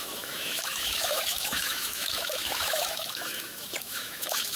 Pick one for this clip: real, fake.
fake